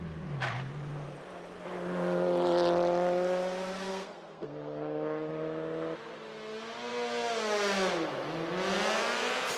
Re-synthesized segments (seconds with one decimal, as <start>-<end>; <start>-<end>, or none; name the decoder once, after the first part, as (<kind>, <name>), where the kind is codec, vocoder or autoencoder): 3.9-5.3 (codec, SNAC)